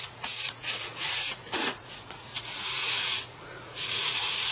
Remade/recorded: remade